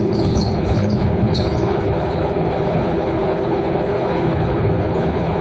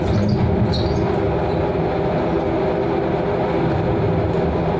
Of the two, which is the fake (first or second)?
first